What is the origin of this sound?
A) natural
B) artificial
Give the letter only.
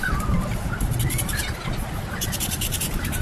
A